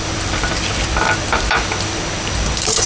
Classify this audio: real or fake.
fake